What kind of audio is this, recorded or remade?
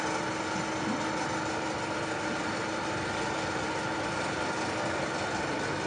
recorded